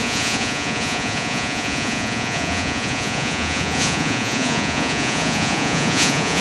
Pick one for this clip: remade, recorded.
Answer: remade